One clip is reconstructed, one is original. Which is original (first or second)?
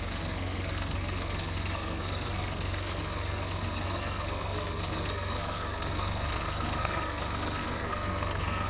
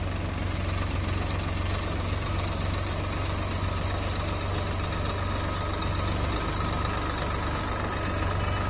second